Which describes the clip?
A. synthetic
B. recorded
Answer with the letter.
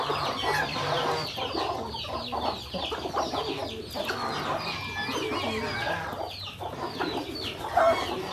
B